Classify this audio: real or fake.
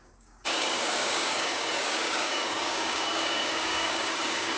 fake